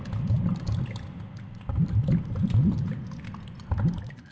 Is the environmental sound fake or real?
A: real